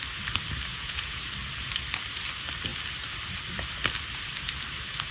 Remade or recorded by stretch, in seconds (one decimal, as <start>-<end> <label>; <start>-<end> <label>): 0.0-0.7 recorded; 0.7-1.2 remade; 1.2-5.1 recorded